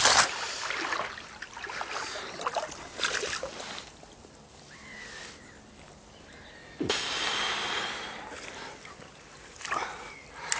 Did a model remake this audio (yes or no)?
no